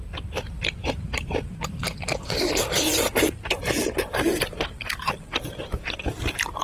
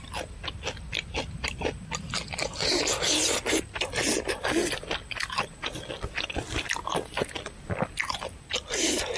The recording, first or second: second